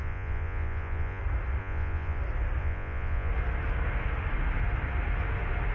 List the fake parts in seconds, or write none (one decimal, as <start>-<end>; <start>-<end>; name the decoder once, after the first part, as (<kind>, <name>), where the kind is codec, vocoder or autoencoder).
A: 0.0-1.2 (vocoder, Vocos); 1.6-2.2; 2.6-3.3